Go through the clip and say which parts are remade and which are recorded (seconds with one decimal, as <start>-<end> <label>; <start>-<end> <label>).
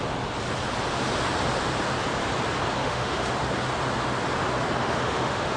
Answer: 0.0-2.8 recorded; 2.8-3.3 remade; 3.3-4.8 recorded; 4.8-5.6 remade